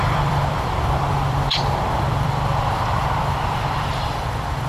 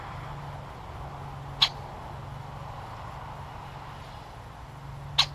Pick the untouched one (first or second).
second